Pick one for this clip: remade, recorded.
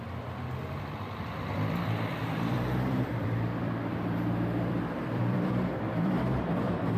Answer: remade